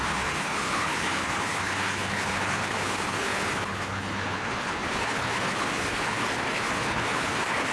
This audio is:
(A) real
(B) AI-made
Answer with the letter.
B